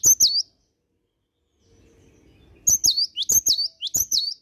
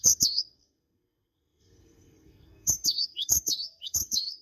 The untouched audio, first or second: first